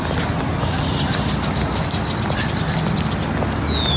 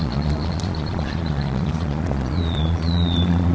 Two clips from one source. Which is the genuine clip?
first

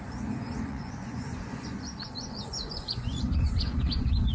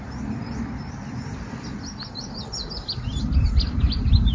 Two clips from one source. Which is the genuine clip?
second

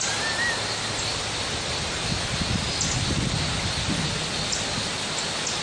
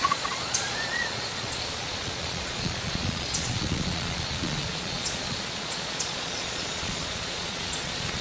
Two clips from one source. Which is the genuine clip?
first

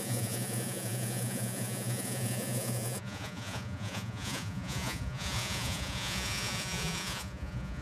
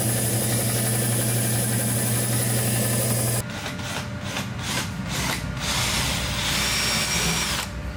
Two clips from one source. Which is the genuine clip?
second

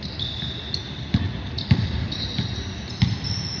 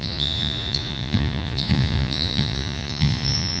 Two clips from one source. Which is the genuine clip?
first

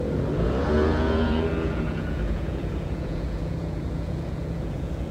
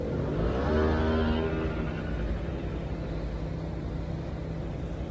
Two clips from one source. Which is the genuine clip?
second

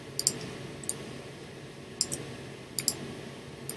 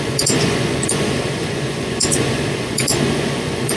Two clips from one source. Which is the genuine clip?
first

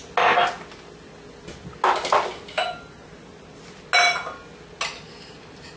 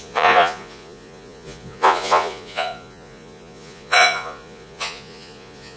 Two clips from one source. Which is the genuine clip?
first